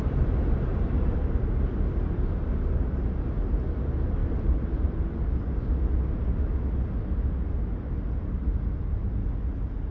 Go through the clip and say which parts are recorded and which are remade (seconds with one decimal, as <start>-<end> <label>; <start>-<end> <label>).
0.0-0.7 recorded; 0.7-1.2 remade; 1.2-9.9 recorded